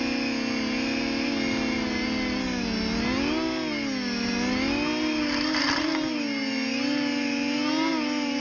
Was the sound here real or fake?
real